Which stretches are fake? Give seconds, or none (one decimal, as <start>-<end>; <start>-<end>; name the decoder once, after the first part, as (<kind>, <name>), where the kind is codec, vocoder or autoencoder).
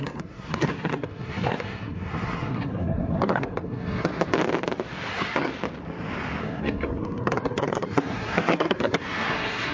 0.0-4.1 (codec, SNAC); 5.1-5.5; 6.4-9.7